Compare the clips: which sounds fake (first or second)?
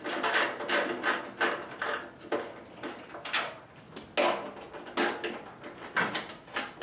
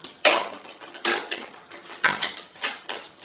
second